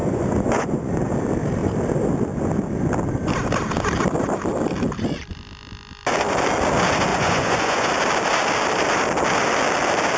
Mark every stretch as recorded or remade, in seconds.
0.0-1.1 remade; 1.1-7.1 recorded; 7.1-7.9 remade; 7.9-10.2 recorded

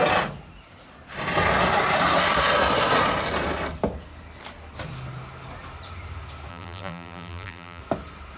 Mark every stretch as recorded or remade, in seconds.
0.0-6.5 recorded; 6.5-7.8 remade; 7.8-8.4 recorded

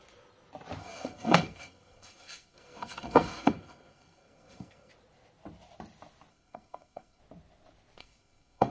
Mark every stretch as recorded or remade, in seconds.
0.0-0.8 recorded; 0.8-4.9 remade; 4.9-6.3 recorded; 6.3-7.2 remade; 7.2-8.0 recorded; 8.0-8.7 remade

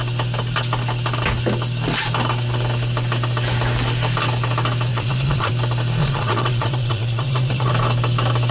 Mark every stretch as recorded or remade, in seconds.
0.0-4.9 recorded; 4.9-5.5 remade; 5.5-6.0 recorded; 6.0-7.7 remade; 7.7-8.5 recorded